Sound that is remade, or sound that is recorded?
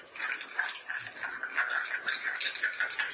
recorded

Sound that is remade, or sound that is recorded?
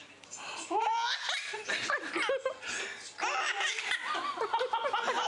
recorded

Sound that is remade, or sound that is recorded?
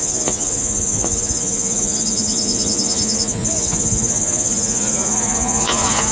remade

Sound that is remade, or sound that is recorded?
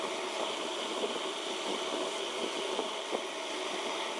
recorded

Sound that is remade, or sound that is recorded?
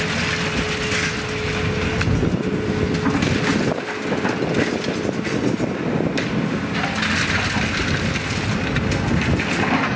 recorded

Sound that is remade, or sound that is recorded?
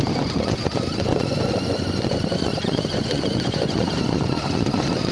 remade